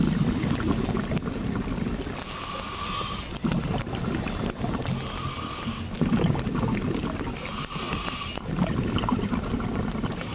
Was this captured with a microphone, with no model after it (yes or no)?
yes